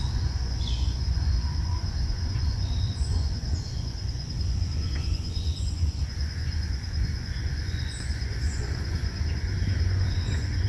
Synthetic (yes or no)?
yes